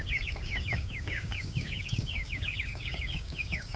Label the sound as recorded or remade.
remade